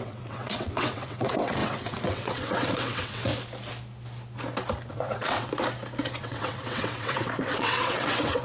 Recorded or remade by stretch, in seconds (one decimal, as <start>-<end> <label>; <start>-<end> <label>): 0.0-3.3 remade; 3.3-4.9 recorded; 4.9-5.5 remade; 5.5-6.2 recorded; 6.2-8.4 remade